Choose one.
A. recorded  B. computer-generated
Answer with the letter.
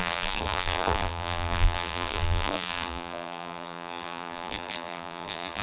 B